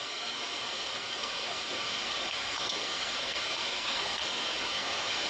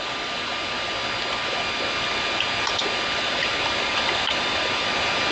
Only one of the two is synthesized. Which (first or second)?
first